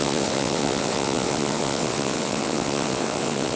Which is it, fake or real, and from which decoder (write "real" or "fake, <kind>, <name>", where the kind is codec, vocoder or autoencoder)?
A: fake, vocoder, WaveNeXt